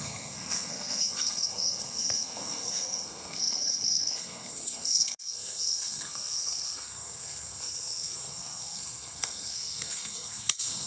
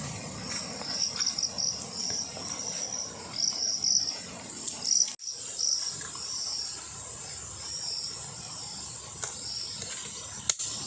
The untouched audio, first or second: second